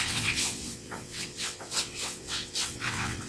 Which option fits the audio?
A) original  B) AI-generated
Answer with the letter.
B